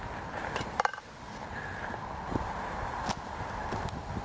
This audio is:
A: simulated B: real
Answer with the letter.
B